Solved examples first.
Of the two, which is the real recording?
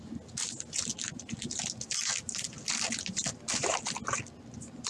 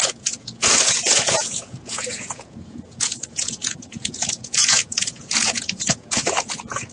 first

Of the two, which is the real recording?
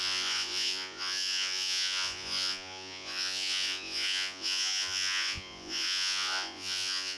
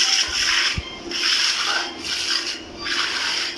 second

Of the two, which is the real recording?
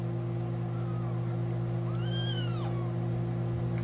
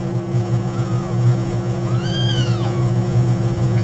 first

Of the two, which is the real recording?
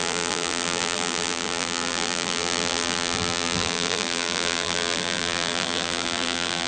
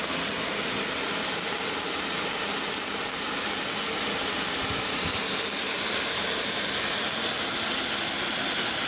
second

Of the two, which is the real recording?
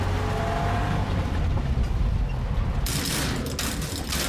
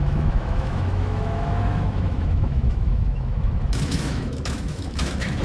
first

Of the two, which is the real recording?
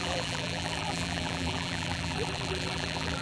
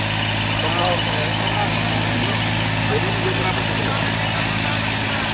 second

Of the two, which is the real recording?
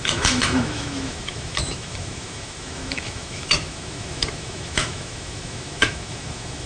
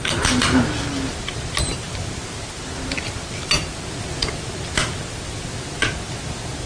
second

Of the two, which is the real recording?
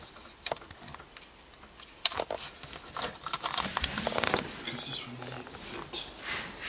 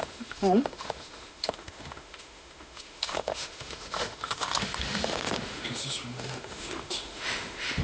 first